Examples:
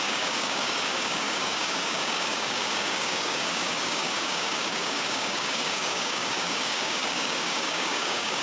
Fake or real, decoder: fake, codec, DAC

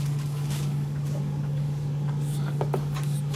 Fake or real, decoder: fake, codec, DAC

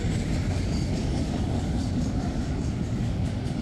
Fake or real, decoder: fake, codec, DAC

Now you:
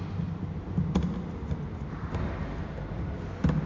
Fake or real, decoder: real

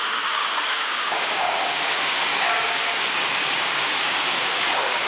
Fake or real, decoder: fake, codec, DAC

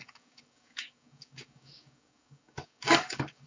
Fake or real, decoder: fake, codec, DAC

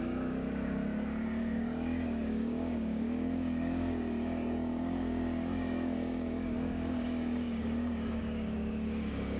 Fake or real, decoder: fake, codec, DAC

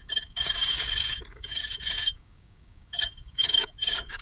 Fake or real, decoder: fake, codec, DAC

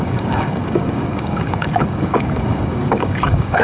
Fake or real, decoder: fake, codec, DAC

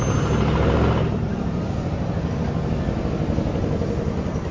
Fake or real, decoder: real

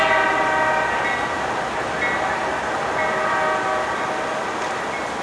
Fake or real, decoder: real